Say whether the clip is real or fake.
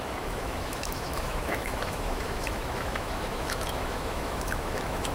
fake